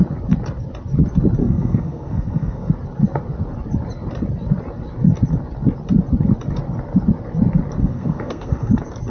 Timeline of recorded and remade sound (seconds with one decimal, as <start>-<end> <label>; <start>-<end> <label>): 0.0-1.4 recorded; 1.4-2.7 remade; 2.7-7.8 recorded; 7.8-8.7 remade; 8.7-9.1 recorded